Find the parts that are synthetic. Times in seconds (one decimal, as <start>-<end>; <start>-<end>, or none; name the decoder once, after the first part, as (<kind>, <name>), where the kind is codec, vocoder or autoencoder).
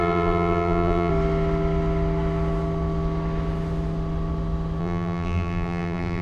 0.0-1.1 (vocoder, BigVGAN v2); 4.8-6.2